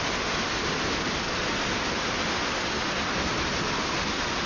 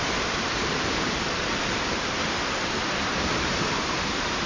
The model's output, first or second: second